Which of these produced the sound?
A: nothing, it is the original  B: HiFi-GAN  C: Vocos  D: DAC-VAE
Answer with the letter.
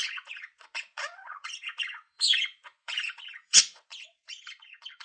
C